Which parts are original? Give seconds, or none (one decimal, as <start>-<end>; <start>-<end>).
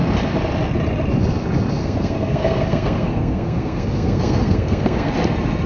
0.0-1.8; 5.1-5.7